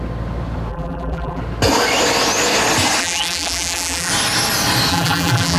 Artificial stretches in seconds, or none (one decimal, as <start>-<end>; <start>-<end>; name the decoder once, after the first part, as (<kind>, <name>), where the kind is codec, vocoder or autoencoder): 0.7-1.4 (vocoder, BigVGAN v2); 3.0-4.1; 4.9-5.6